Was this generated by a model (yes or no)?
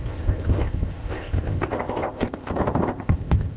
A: yes